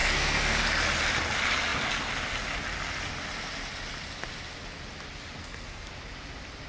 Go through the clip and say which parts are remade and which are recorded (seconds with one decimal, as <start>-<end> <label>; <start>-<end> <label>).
0.0-0.6 remade; 0.6-5.4 recorded; 5.4-5.9 remade; 5.9-6.7 recorded